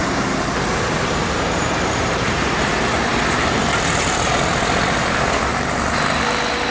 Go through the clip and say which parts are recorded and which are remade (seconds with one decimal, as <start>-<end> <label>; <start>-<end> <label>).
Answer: 0.0-4.0 remade; 4.0-5.5 recorded; 5.5-6.2 remade; 6.2-6.7 recorded